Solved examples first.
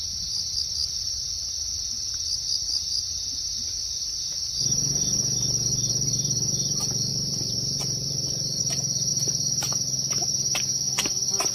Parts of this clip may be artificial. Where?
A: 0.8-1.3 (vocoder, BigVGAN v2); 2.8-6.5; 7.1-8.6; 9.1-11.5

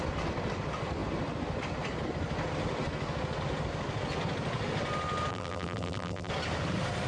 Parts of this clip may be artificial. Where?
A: 5.3-6.3 (vocoder, BigVGAN v2)

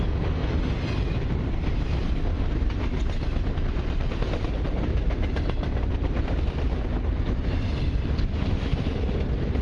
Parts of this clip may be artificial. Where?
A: 0.4-1.3 (vocoder, BigVGAN v2)